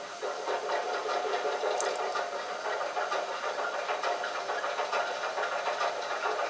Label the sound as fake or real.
real